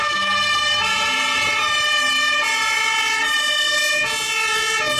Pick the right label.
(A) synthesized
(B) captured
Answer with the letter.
B